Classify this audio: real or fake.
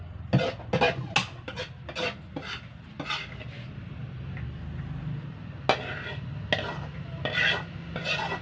real